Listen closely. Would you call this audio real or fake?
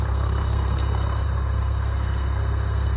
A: fake